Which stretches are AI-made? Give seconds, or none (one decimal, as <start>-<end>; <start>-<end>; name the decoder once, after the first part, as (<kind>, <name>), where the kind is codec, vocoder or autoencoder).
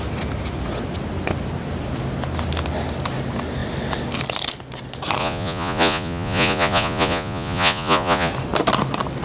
5.2-8.3 (vocoder, Vocos)